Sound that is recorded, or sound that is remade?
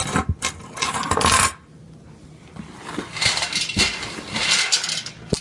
recorded